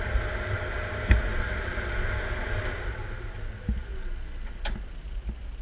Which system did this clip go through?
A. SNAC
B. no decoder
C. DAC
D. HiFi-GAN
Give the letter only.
B